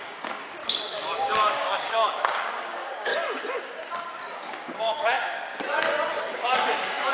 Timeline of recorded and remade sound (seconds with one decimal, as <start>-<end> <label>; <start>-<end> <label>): 0.0-3.1 remade; 3.1-4.4 recorded; 4.4-5.5 remade; 5.5-6.2 recorded; 6.2-7.1 remade